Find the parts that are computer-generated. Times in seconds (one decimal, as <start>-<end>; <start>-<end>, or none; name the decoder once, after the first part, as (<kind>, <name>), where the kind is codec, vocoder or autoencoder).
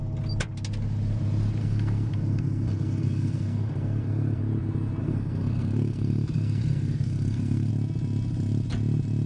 1.6-4.4 (codec, SNAC); 5.0-7.7